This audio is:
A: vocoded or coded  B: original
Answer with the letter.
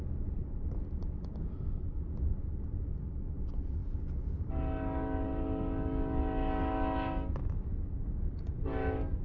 B